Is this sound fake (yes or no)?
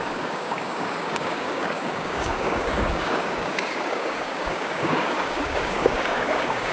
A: yes